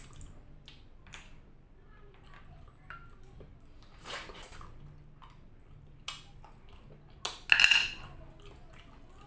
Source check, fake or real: real